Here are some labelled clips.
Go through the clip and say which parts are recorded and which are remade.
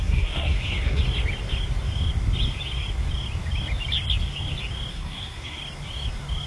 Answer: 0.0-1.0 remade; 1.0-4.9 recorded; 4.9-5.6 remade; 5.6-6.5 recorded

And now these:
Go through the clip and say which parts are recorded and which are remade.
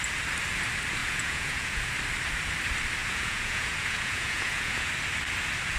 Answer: 0.0-1.0 recorded; 1.0-1.9 remade; 1.9-3.0 recorded; 3.0-4.9 remade; 4.9-5.8 recorded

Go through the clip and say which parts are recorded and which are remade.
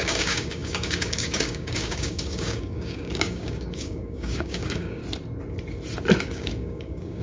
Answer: 0.0-5.0 remade; 5.0-6.2 recorded; 6.2-7.2 remade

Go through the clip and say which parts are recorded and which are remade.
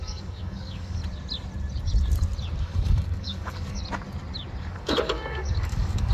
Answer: 0.0-1.0 remade; 1.0-2.6 recorded; 2.6-3.8 remade; 3.8-4.6 recorded; 4.6-6.1 remade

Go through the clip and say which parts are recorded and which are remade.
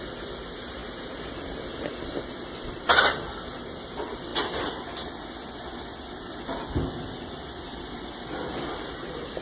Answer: 0.0-4.3 remade; 4.3-5.5 recorded; 5.5-5.9 remade; 5.9-7.6 recorded; 7.6-9.4 remade